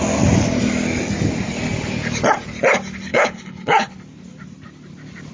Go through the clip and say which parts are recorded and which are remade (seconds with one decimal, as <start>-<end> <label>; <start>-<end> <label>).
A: 0.0-3.1 recorded; 3.1-3.9 remade; 3.9-5.3 recorded